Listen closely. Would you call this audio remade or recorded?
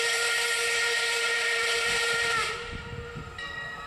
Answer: recorded